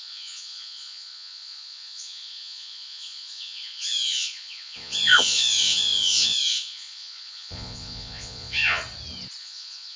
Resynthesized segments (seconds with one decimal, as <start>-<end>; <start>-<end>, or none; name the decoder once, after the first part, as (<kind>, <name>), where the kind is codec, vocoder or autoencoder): 0.0-8.8 (vocoder, Vocos); 9.4-10.0